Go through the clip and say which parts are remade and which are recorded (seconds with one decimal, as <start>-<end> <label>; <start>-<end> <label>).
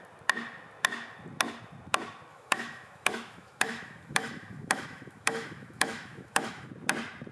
0.0-2.3 recorded; 2.3-6.7 remade; 6.7-7.3 recorded